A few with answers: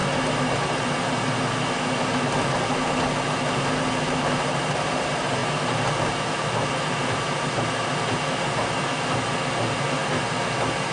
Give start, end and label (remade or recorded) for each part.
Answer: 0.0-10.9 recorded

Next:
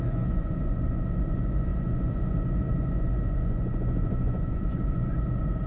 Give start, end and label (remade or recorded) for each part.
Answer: 0.0-5.7 remade

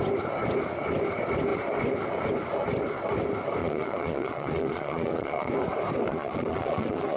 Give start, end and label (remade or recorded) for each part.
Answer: 0.0-3.6 recorded; 3.6-5.5 remade; 5.5-6.1 recorded; 6.1-7.2 remade

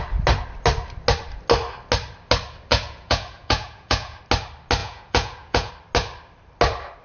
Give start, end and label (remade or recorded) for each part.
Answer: 0.0-2.7 recorded; 2.7-4.2 remade; 4.2-4.8 recorded; 4.8-5.7 remade; 5.7-7.0 recorded

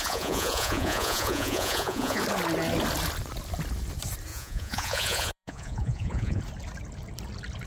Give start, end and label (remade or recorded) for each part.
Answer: 0.0-2.2 remade; 2.2-4.3 recorded; 4.3-6.4 remade; 6.4-7.7 recorded

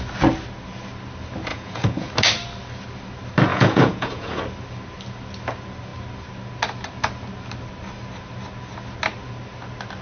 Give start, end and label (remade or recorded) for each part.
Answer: 0.0-1.5 recorded; 1.5-2.1 remade; 2.1-3.5 recorded; 3.5-4.4 remade; 4.4-10.0 recorded

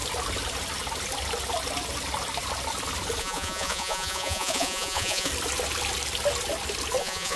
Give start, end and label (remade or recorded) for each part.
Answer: 0.0-3.2 recorded; 3.2-5.3 remade; 5.3-7.0 recorded; 7.0-7.4 remade